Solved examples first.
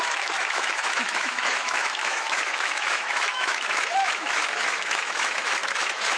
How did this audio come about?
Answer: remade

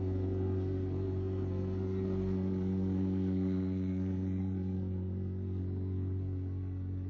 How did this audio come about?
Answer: remade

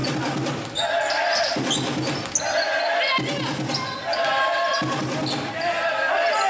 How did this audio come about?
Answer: recorded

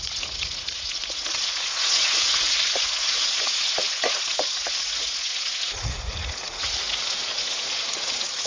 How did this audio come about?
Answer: remade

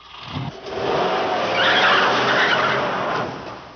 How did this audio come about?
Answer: recorded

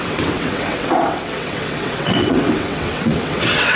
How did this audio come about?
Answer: remade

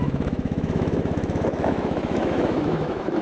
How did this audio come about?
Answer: remade